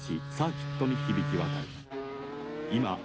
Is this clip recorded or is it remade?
recorded